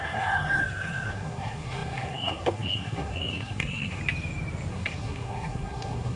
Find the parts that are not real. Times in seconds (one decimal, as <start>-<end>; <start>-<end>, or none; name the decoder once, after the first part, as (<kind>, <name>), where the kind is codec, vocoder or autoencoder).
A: 0.0-4.0 (codec, SNAC); 4.7-6.2